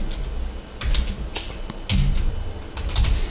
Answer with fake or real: real